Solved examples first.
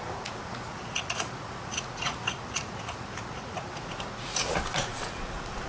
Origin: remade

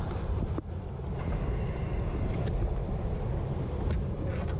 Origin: recorded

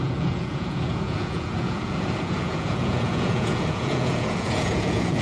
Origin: remade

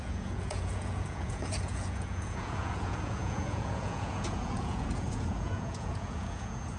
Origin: remade